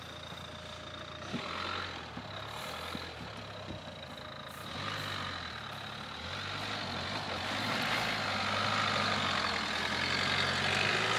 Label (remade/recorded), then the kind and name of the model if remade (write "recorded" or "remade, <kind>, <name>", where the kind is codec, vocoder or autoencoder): recorded